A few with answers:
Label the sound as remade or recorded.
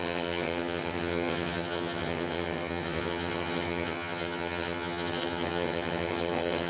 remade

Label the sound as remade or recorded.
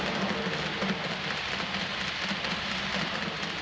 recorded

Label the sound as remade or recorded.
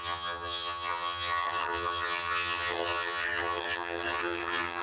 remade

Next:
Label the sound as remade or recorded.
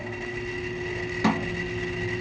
recorded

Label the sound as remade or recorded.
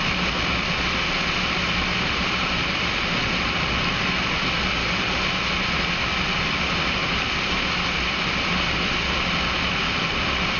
recorded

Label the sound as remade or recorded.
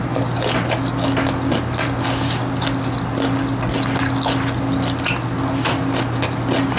recorded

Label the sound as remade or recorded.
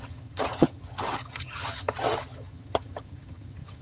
remade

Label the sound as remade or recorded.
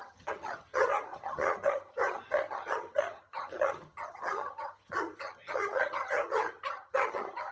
remade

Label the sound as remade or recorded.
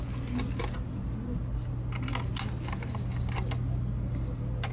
recorded